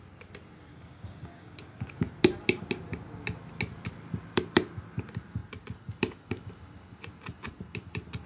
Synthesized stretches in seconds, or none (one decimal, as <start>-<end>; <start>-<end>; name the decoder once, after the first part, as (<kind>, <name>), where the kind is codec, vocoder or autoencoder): 0.7-1.9 (codec, DAC)

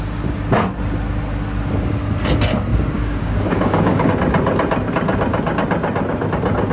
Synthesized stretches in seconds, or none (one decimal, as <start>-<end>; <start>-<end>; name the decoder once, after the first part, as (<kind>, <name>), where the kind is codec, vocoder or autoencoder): 2.7-4.1 (codec, DAC)

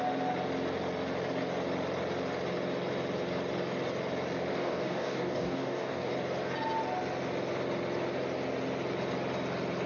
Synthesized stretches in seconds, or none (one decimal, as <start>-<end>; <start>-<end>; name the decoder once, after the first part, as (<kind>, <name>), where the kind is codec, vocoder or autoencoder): 4.5-6.1 (codec, DAC)

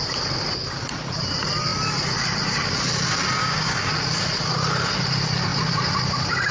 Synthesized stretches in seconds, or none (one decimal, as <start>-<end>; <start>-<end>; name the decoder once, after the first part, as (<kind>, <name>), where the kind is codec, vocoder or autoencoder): 3.4-3.9 (codec, DAC)

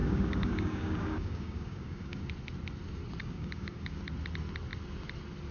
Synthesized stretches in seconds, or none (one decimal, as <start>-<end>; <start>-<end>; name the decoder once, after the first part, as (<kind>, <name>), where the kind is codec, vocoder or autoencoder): 0.0-2.2 (codec, DAC); 3.2-4.0